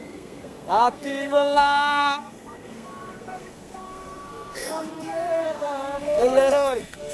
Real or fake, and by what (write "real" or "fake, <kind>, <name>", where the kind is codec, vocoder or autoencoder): fake, codec, SNAC